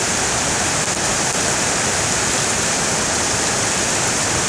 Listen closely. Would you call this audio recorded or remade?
recorded